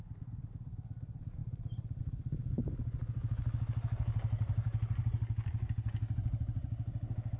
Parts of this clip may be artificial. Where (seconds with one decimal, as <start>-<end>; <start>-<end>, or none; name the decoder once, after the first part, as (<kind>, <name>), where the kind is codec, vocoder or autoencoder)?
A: none